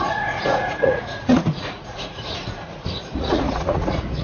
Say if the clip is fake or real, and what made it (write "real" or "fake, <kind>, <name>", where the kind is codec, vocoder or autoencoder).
fake, vocoder, Vocos